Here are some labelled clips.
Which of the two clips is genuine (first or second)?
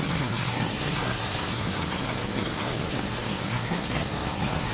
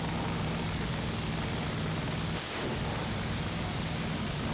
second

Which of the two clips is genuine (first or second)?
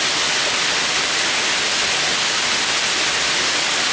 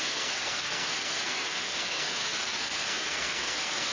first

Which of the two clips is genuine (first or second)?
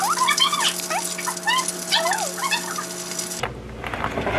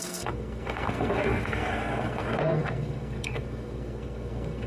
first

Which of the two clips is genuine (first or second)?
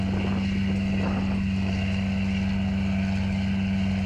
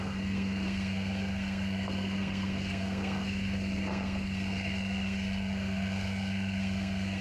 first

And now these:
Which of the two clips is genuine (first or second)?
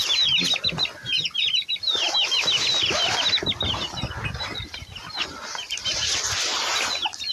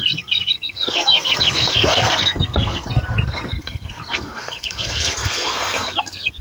first